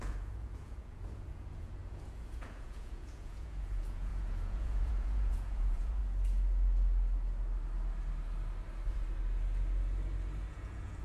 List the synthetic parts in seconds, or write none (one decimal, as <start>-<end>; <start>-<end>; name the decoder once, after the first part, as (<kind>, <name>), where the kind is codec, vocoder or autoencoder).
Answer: 0.0-6.0 (vocoder, Vocos); 10.5-11.0